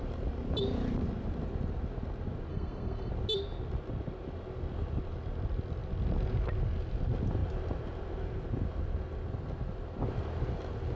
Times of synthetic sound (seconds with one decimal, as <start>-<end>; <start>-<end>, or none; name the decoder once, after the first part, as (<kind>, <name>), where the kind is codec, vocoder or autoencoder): 2.5-3.1 (codec, SNAC)